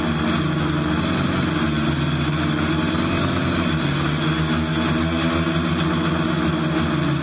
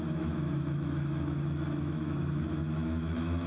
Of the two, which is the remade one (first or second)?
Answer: second